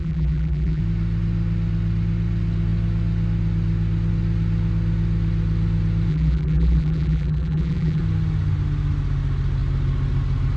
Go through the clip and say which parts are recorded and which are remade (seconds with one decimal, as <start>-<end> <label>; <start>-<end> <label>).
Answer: 0.0-0.8 remade; 0.8-6.1 recorded; 6.1-8.0 remade; 8.0-10.6 recorded